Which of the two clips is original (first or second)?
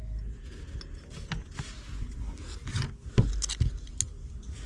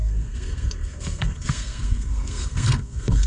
first